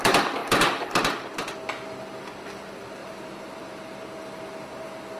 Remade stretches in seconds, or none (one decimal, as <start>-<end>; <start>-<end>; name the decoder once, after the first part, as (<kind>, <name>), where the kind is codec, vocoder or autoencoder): 3.0-3.8 (vocoder, BigVGAN v2)